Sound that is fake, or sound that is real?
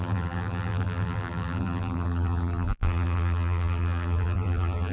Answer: fake